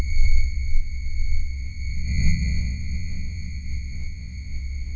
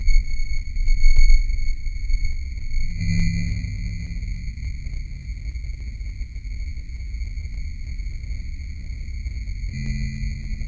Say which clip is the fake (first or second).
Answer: first